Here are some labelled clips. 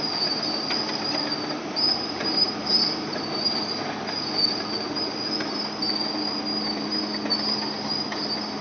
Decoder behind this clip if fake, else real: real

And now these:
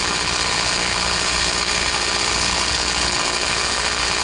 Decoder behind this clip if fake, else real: fake, codec, HILCodec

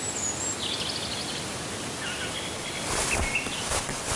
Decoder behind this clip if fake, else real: real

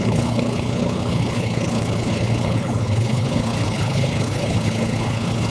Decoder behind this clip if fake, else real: fake, codec, HILCodec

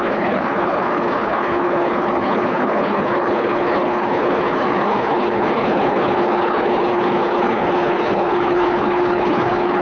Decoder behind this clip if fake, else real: fake, codec, HILCodec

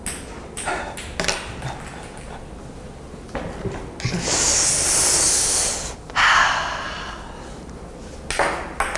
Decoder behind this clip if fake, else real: real